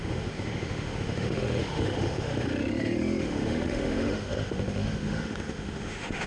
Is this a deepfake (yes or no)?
yes